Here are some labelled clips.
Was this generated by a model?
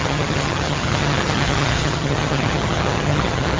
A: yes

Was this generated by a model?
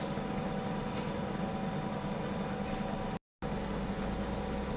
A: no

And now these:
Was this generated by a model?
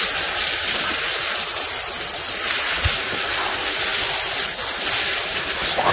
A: no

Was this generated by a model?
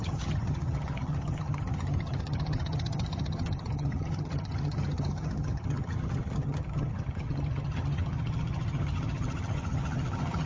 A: yes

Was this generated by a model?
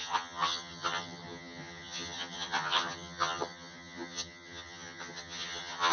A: yes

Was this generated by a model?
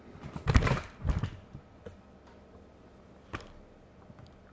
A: no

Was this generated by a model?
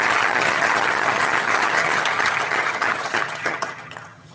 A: yes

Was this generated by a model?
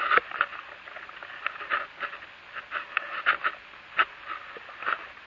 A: no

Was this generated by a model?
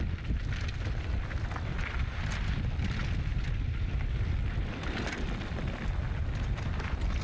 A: no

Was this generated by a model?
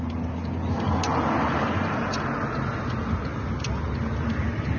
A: no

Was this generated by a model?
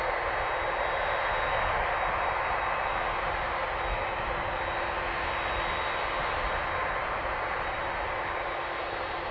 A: no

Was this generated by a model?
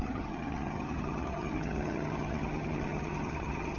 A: yes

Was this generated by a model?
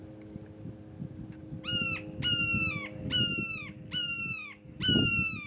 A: no